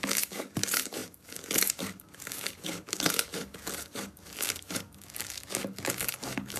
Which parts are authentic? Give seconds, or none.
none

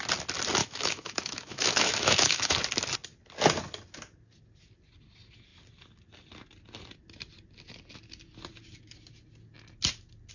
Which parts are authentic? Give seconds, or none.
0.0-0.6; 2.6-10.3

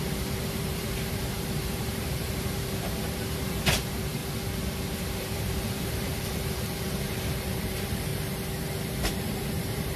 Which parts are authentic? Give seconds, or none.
4.2-5.0; 8.1-9.2

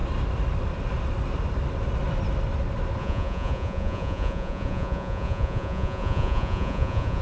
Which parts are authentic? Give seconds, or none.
0.0-3.0

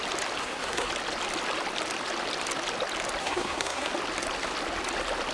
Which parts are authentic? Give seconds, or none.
0.0-0.4; 0.9-3.2; 3.9-5.3

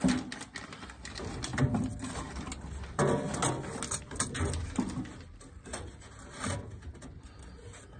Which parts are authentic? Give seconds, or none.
0.0-8.0